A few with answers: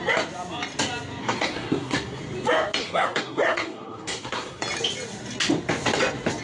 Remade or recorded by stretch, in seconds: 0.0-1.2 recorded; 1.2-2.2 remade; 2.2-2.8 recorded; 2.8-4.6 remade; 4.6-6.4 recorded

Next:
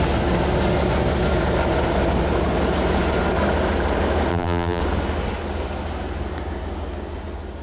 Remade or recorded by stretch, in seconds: 0.0-4.3 recorded; 4.3-4.8 remade; 4.8-7.6 recorded

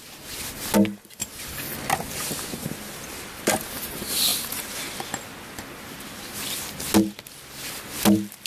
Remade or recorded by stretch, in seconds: 0.0-8.5 recorded

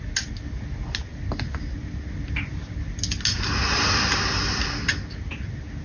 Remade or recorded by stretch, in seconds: 0.0-5.8 recorded

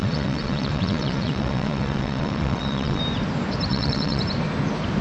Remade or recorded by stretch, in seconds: 0.0-3.0 remade; 3.0-3.7 recorded; 3.7-4.2 remade; 4.2-5.0 recorded

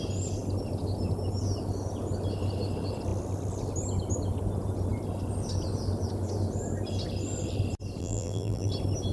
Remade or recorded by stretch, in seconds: 0.0-8.0 recorded; 8.0-8.7 remade; 8.7-9.1 recorded